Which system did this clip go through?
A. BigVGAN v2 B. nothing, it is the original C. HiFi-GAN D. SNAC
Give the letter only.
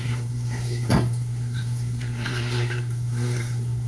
D